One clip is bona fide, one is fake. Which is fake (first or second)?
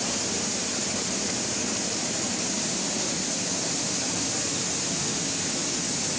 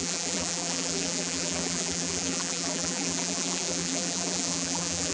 second